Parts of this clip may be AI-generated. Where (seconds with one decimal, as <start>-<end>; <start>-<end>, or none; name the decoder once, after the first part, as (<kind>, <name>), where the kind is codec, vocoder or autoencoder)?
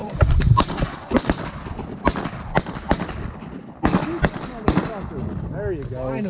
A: 0.0-1.4 (vocoder, BigVGAN v2)